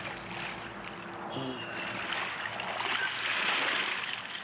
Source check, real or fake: real